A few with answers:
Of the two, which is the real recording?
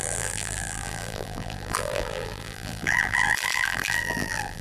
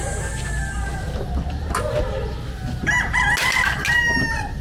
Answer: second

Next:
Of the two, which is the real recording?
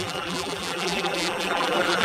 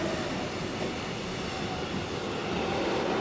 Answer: second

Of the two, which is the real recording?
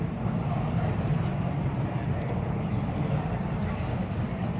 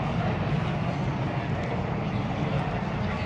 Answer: second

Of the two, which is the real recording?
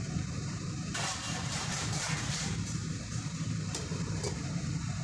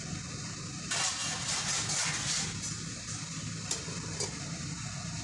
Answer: second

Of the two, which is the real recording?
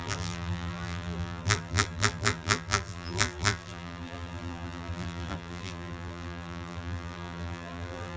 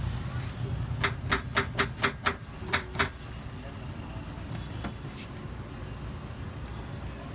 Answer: second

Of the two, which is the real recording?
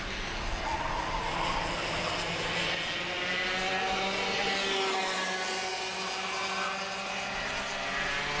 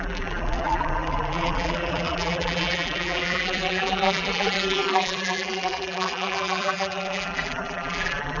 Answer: first